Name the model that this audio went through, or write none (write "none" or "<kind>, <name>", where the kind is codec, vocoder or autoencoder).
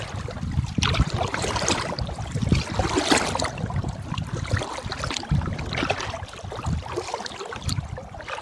none